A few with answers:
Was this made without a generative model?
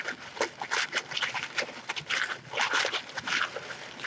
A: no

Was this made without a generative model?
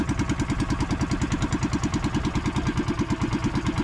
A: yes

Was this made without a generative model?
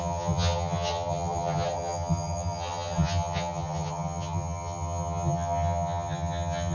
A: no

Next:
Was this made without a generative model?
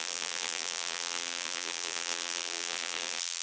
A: no